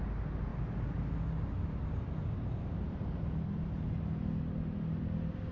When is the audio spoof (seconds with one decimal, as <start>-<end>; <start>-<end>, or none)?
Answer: none